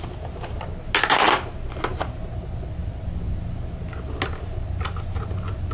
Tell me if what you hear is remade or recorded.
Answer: recorded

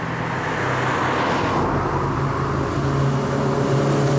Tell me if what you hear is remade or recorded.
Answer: recorded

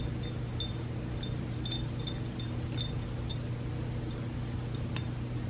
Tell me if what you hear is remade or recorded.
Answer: recorded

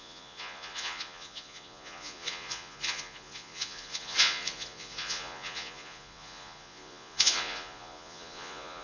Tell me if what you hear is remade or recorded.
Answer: remade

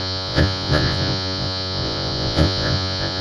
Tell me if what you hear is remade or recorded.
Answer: remade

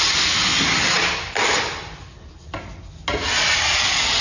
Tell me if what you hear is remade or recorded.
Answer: recorded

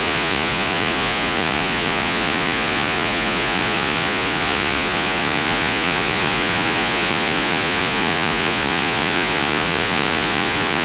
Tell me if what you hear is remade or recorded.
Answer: remade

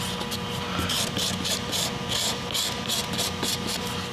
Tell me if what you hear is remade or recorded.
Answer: recorded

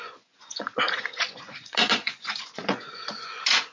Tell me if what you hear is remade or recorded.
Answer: remade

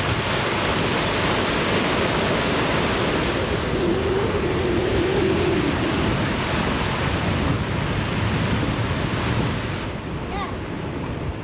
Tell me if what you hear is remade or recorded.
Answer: recorded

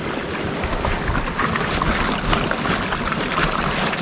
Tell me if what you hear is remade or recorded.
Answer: recorded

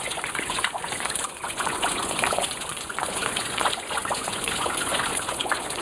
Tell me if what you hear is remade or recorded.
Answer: remade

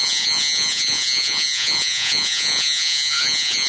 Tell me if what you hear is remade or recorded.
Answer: remade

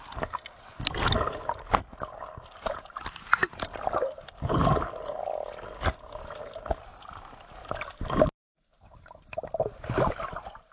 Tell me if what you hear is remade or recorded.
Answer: recorded